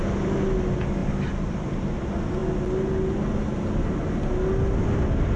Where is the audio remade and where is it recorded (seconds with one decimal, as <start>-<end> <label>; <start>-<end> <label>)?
0.0-1.0 recorded; 1.0-1.6 remade; 1.6-5.4 recorded